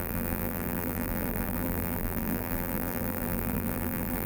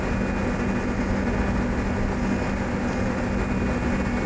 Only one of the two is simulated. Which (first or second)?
first